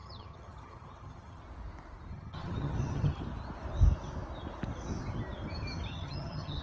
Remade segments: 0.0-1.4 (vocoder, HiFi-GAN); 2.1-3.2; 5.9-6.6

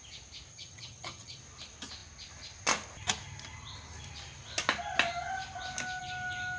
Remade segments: 0.5-1.4 (vocoder, HiFi-GAN)

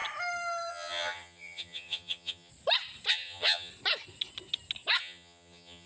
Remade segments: 0.7-2.5 (vocoder, HiFi-GAN); 3.1-3.7; 5.0-5.9

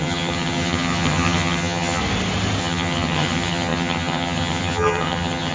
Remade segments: 0.0-2.0 (vocoder, HiFi-GAN); 2.6-5.5